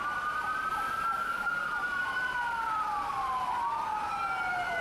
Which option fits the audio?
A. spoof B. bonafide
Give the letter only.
B